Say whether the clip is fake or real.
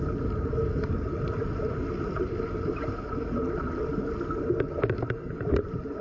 real